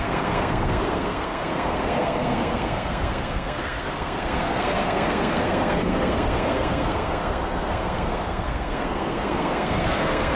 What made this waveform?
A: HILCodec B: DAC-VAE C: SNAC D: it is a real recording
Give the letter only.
C